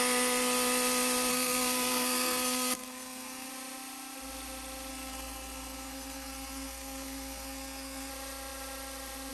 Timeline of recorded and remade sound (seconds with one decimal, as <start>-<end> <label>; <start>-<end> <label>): 0.0-1.3 recorded; 1.3-3.5 remade; 3.5-4.9 recorded; 4.9-8.1 remade; 8.1-9.3 recorded